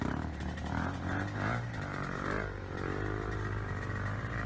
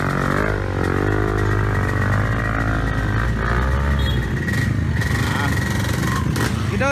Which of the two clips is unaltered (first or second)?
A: second